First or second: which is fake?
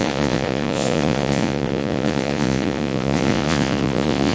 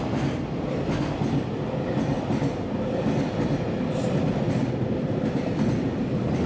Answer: first